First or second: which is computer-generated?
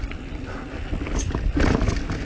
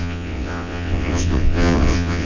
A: second